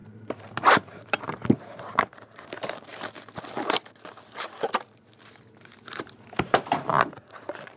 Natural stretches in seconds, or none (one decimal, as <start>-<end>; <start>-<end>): 2.9-5.6